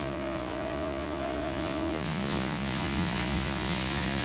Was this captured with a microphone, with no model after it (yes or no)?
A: no